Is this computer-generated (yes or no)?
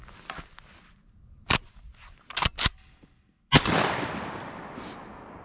no